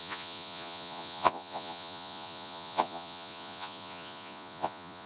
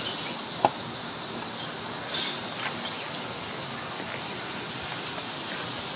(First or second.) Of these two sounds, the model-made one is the first